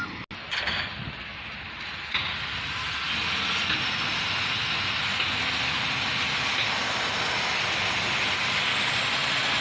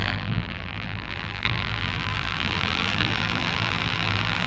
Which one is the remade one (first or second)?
second